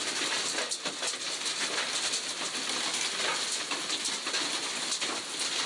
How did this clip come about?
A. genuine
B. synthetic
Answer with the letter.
A